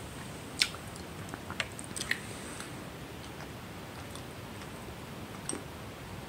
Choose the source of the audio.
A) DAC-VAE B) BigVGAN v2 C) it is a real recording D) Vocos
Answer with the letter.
C